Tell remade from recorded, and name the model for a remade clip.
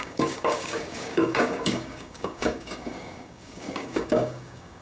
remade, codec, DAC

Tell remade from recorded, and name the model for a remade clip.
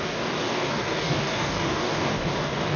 remade, codec, DAC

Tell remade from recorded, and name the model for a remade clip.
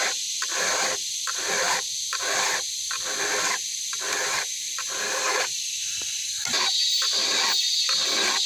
recorded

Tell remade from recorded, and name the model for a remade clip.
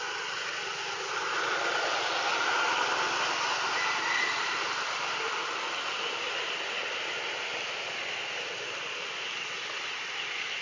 recorded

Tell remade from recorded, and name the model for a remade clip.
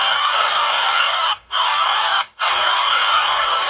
remade, codec, DAC